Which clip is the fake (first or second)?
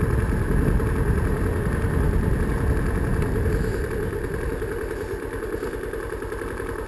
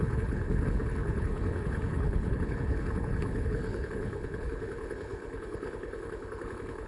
second